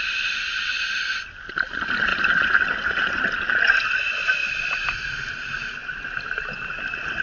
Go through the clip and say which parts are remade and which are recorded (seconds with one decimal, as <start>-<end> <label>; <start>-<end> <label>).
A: 0.0-7.2 recorded